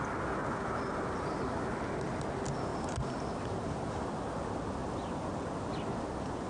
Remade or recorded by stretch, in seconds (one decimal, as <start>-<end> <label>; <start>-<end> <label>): 0.0-0.4 recorded; 0.4-1.8 remade; 1.8-2.7 recorded; 2.7-4.1 remade; 4.1-6.5 recorded